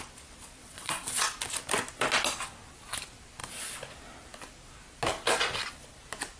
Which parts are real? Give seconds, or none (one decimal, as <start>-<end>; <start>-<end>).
0.0-0.6; 1.3-6.4